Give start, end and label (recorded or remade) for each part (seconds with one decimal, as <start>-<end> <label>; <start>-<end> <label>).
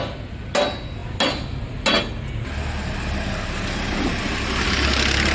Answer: 0.0-5.3 recorded